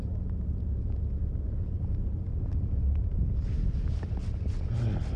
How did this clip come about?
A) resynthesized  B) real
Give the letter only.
B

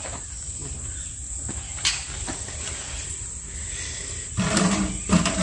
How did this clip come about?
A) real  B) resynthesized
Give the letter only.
B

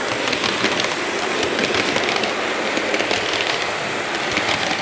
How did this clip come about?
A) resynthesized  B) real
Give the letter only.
B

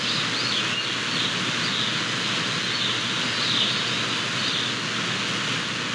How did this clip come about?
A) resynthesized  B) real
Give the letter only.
B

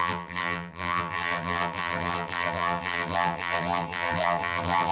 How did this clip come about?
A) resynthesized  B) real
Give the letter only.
A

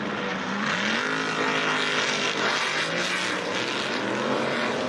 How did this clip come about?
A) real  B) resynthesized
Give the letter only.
A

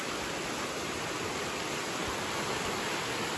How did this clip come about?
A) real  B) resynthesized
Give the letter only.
A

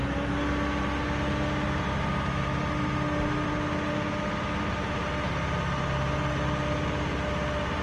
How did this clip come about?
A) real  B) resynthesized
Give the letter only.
A